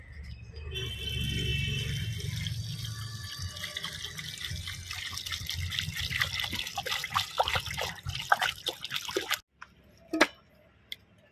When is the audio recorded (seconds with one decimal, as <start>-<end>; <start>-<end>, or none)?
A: 0.0-11.3